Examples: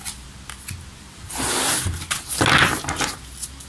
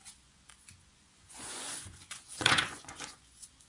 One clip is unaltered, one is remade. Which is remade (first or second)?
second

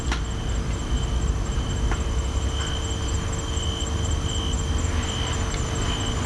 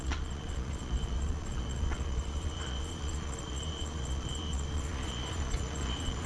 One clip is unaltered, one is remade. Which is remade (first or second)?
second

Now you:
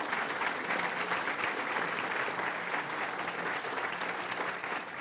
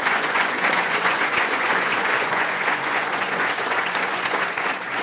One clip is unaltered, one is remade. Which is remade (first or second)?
second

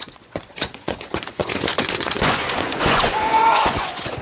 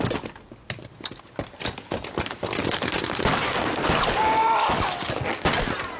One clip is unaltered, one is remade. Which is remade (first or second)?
first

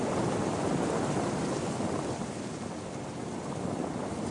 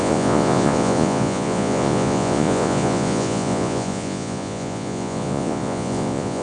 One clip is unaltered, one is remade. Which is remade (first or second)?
second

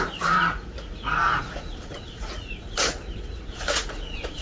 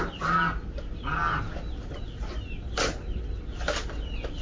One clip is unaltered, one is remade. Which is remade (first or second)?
first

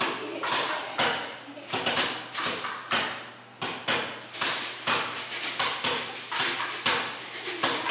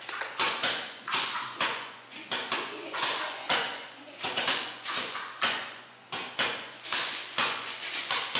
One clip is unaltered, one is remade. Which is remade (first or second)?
second